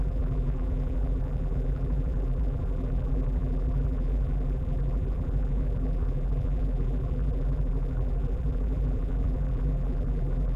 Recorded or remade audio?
remade